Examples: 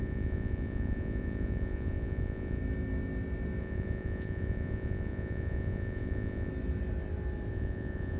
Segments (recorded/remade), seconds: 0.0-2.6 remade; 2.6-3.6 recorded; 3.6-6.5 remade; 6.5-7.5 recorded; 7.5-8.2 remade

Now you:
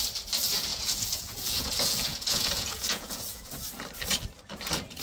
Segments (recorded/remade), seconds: 0.0-0.7 recorded; 0.7-3.5 remade; 3.5-5.0 recorded

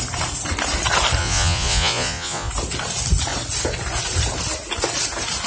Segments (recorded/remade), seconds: 0.0-1.2 recorded; 1.2-2.5 remade; 2.5-5.5 recorded

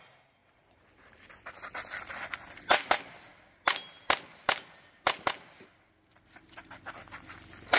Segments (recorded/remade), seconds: 0.0-7.8 recorded

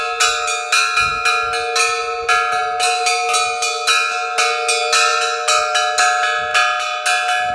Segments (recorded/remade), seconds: 0.0-7.5 recorded